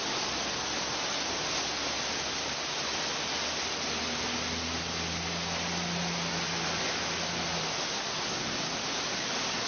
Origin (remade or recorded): recorded